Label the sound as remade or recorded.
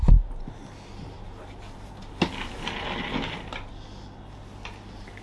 recorded